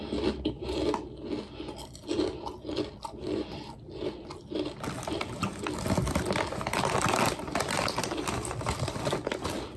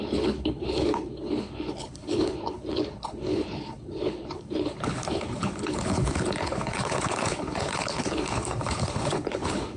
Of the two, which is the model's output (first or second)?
second